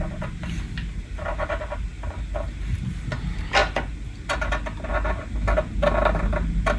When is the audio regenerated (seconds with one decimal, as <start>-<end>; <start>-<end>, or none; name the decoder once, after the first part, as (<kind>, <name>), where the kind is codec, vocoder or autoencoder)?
none